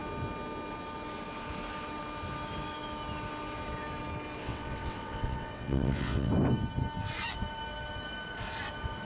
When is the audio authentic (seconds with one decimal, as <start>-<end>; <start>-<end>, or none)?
0.0-4.4; 6.3-9.0